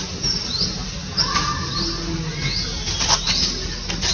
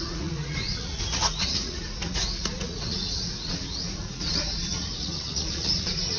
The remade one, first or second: second